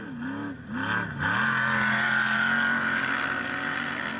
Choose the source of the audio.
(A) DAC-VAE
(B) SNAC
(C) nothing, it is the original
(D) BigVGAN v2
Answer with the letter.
C